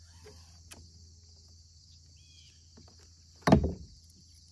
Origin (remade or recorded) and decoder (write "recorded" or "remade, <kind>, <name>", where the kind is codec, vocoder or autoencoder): recorded